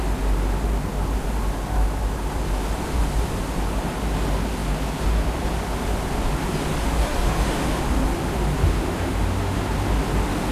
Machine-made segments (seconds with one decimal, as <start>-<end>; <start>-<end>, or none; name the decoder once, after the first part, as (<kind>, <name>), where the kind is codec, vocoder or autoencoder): 6.8-7.8 (autoencoder, DAC-VAE); 8.7-9.6